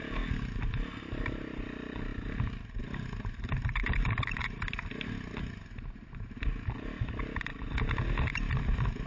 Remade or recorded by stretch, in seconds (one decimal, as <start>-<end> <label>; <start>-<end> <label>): 0.0-9.1 recorded